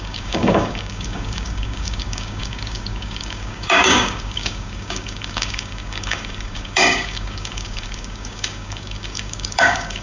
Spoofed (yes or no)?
yes